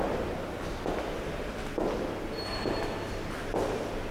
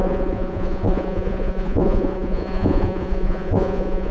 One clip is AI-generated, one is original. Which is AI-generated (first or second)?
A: second